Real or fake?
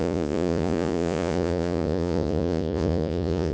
fake